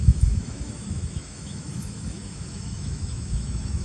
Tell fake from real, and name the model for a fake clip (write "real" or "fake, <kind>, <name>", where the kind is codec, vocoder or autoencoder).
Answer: fake, autoencoder, DAC-VAE